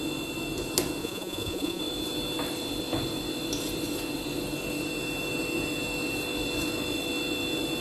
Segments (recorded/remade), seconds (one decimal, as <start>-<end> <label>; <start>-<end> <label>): 0.0-1.0 recorded; 1.0-1.8 remade; 1.8-7.8 recorded